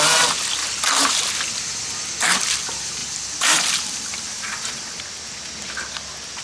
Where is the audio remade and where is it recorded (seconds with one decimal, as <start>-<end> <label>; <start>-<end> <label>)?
0.0-0.6 recorded; 0.6-1.3 remade; 1.3-3.0 recorded; 3.0-5.0 remade; 5.0-6.4 recorded